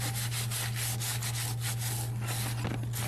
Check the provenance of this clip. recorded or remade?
recorded